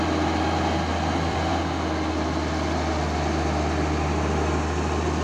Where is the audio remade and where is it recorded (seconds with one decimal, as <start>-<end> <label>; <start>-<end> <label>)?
0.0-0.9 recorded; 0.9-1.6 remade; 1.6-5.2 recorded

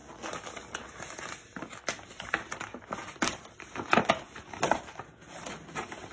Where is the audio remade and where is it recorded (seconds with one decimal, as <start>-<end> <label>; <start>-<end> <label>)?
0.0-2.8 recorded; 2.8-6.1 remade

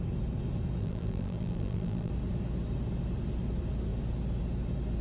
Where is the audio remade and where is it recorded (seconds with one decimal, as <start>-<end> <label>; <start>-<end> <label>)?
0.0-0.8 recorded; 0.8-2.1 remade; 2.1-5.0 recorded

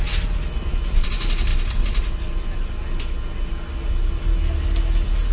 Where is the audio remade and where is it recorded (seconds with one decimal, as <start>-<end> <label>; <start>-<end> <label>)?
0.0-5.3 recorded